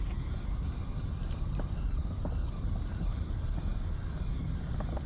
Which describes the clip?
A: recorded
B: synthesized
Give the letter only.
A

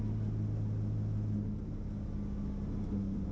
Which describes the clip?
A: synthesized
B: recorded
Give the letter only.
B